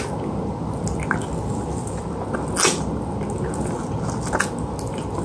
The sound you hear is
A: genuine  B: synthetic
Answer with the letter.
A